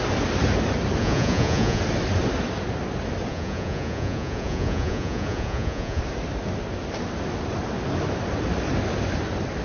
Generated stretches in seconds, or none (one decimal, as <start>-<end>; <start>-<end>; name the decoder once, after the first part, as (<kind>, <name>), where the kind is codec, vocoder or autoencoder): 1.0-1.8 (vocoder, Vocos); 3.3-6.0